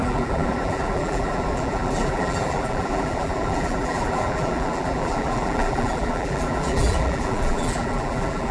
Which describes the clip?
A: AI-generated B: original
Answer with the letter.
A